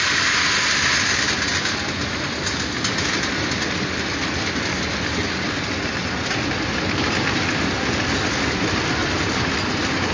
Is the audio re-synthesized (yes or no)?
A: no